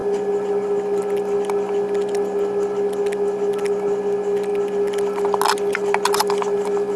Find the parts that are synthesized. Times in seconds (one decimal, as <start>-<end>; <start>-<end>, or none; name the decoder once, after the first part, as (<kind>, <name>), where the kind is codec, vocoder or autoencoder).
none